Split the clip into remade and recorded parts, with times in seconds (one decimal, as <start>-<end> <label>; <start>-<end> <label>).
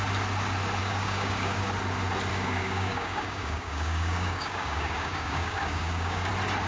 0.0-0.8 recorded; 0.8-1.6 remade; 1.6-2.3 recorded; 2.3-6.3 remade; 6.3-6.7 recorded